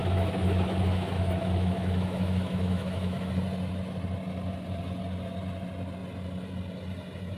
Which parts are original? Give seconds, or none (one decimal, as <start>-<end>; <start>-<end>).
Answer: 3.3-7.4

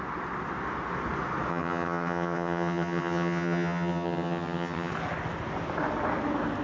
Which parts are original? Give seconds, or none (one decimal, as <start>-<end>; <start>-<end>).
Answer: 0.0-1.5; 4.9-6.6

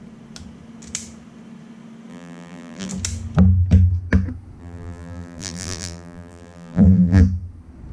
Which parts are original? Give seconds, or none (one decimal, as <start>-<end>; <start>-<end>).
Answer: 0.0-2.1; 2.9-4.6; 7.2-7.9

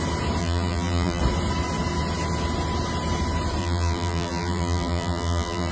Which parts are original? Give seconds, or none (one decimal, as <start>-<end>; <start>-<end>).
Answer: 0.0-0.4; 1.2-3.6

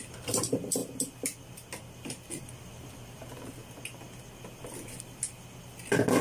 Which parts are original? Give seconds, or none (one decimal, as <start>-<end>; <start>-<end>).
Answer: 0.8-2.5; 3.6-6.2

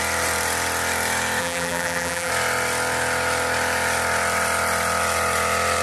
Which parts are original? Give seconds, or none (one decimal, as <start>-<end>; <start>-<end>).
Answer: 0.0-1.4; 2.3-5.8